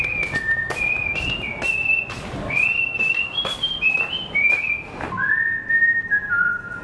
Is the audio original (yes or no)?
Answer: yes